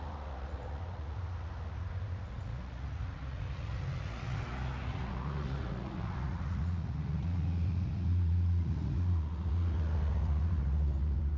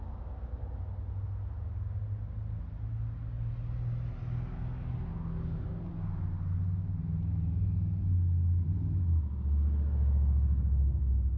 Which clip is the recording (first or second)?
second